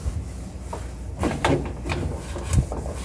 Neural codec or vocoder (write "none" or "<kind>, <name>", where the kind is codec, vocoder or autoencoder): none